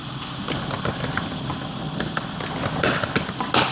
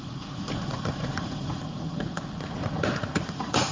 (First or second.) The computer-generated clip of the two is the second